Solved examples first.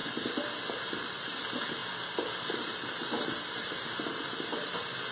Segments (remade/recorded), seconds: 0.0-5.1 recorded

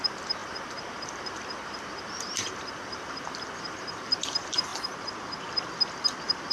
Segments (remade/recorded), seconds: 0.0-4.7 remade; 4.7-6.5 recorded

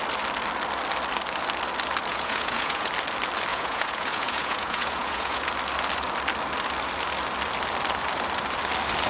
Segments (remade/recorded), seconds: 0.0-2.1 recorded; 2.1-2.9 remade; 2.9-3.5 recorded; 3.5-5.5 remade; 5.5-9.1 recorded

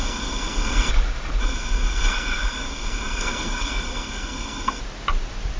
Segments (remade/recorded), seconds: 0.0-0.9 remade; 0.9-1.4 recorded; 1.4-4.8 remade; 4.8-5.6 recorded